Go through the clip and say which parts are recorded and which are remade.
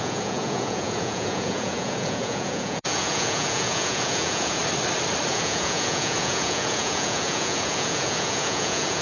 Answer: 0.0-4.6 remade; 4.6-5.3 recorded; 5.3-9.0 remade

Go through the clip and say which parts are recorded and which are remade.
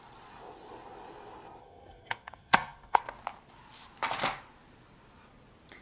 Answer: 0.0-1.6 recorded; 1.6-3.0 remade; 3.0-5.8 recorded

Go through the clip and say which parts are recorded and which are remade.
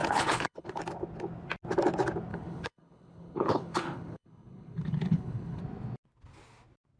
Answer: 0.0-0.8 remade; 0.8-2.3 recorded; 2.3-5.6 remade; 5.6-7.0 recorded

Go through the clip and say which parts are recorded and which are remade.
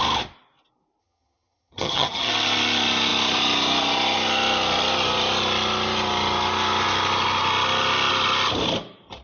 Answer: 0.0-1.0 recorded; 1.0-2.3 remade; 2.3-9.2 recorded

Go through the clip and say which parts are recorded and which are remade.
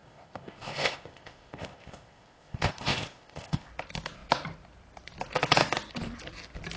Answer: 0.0-3.7 remade; 3.7-6.8 recorded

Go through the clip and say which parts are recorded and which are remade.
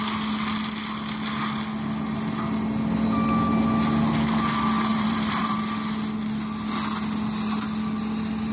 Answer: 0.0-4.9 recorded; 4.9-5.6 remade; 5.6-8.5 recorded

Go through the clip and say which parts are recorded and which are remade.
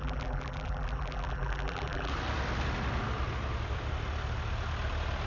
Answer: 0.0-2.1 remade; 2.1-5.3 recorded